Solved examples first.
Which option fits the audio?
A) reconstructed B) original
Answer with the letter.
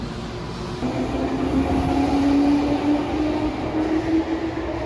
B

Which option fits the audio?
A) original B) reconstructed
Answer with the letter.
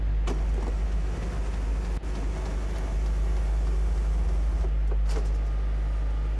A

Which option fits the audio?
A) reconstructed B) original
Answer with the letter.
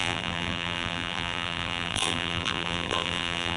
A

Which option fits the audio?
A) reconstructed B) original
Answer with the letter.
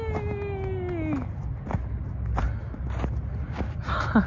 B